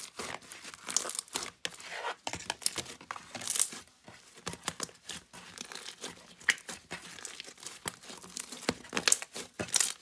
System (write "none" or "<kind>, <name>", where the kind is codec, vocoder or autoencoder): none